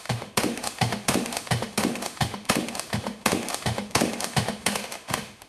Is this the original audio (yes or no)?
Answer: no